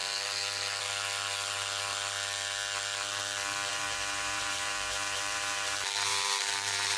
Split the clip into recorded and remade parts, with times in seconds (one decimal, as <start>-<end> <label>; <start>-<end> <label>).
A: 0.0-3.7 recorded; 3.7-7.0 remade